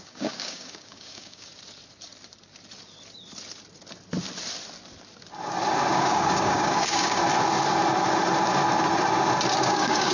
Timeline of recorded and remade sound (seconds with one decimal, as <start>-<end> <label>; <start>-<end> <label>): 0.0-1.5 remade; 1.5-5.9 recorded; 5.9-7.2 remade; 7.2-9.6 recorded; 9.6-10.1 remade